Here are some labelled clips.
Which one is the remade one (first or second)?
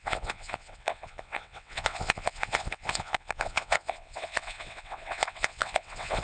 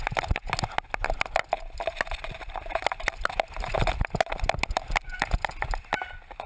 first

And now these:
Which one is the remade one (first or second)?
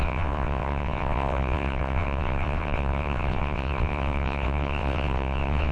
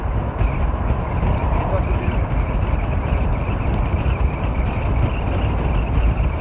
first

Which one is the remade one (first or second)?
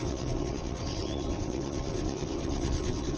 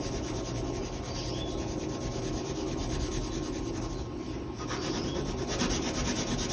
first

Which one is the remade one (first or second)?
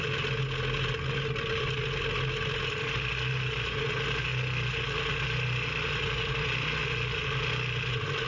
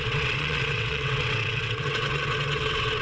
second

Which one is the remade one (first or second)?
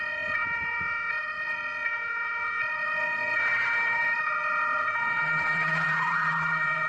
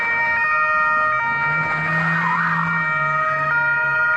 first